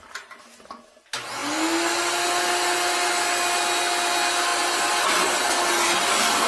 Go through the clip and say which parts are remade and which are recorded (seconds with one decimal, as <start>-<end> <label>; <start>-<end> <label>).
0.0-6.5 recorded